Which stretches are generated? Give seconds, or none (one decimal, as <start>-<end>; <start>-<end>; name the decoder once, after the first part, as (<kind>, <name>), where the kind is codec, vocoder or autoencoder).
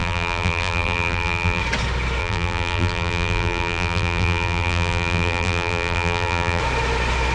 0.0-1.6 (vocoder, BigVGAN v2); 2.2-6.6